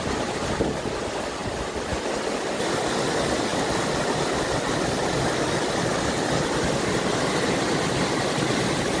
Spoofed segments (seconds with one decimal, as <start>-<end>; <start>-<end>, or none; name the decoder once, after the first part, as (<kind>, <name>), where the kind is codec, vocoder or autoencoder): none